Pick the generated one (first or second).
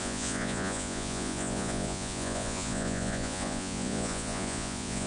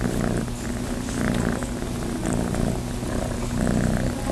first